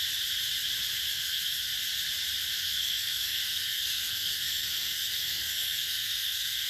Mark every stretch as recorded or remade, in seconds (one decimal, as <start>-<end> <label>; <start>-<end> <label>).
0.0-1.1 recorded; 1.1-1.7 remade; 1.7-2.5 recorded; 2.5-6.7 remade